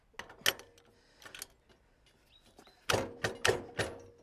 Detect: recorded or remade recorded